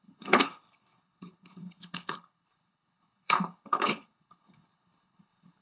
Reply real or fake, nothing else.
fake